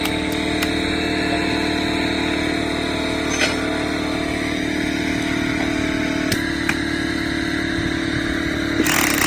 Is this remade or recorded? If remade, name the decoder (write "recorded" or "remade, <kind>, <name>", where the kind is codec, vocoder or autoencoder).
recorded